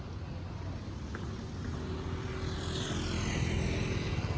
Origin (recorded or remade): recorded